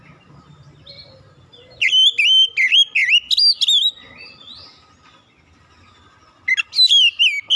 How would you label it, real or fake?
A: real